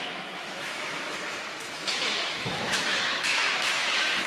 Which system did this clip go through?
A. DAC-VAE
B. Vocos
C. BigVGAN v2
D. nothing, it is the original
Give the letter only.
A